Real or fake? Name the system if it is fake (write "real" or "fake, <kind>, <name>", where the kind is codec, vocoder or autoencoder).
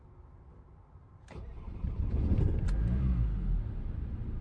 real